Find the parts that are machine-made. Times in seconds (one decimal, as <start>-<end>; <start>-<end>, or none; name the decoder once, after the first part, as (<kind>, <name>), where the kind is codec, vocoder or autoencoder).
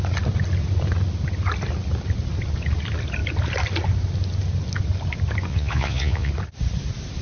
5.5-6.3 (vocoder, Vocos)